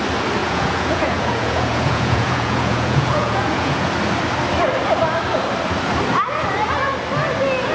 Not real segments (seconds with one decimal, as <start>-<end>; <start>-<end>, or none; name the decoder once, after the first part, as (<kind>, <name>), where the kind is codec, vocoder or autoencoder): 0.4-3.9 (vocoder, Vocos)